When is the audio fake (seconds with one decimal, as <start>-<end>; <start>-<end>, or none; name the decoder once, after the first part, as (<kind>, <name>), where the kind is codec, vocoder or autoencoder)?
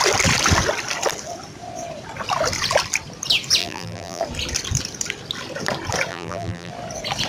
3.6-4.2 (vocoder, BigVGAN v2); 6.1-6.7